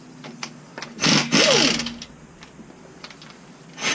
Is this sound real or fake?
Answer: real